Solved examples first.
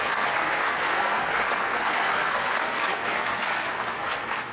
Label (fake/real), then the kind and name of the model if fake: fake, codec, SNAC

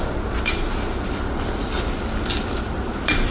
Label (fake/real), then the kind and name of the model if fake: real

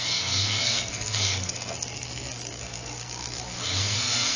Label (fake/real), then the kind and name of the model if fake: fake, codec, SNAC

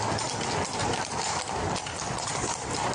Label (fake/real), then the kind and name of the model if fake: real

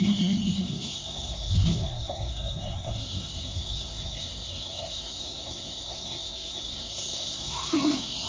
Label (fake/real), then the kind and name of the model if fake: fake, codec, SNAC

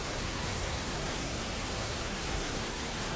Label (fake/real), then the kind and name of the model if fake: fake, codec, SNAC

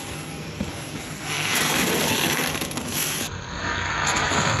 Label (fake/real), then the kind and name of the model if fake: fake, codec, SNAC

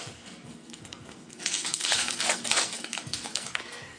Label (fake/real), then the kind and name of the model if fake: fake, codec, SNAC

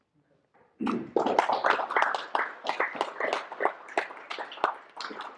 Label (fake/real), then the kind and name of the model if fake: real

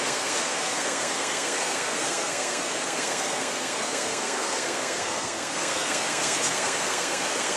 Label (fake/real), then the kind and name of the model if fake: fake, codec, SNAC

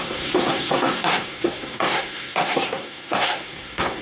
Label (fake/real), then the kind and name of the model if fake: fake, codec, SNAC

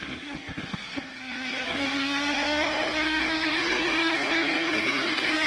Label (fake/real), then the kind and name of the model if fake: fake, codec, SNAC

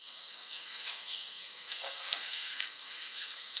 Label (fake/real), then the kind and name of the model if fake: fake, codec, SNAC